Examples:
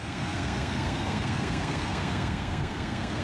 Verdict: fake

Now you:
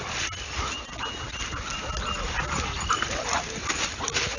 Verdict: real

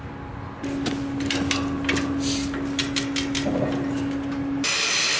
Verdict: real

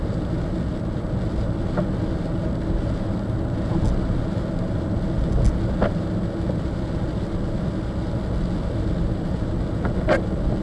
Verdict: real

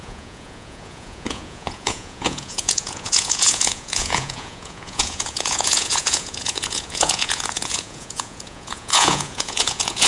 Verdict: fake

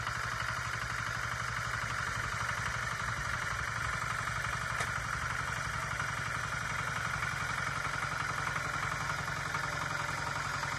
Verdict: real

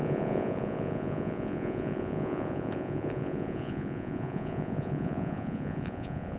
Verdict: fake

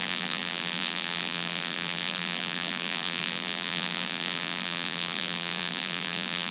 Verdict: fake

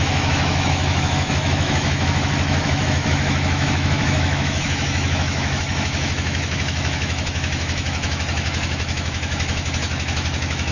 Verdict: fake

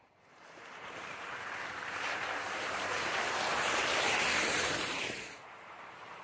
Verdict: fake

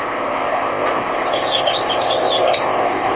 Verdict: fake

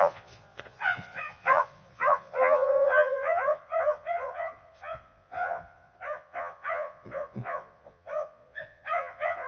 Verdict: fake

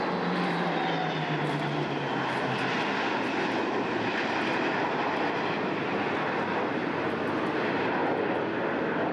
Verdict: real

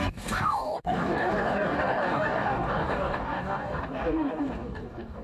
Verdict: fake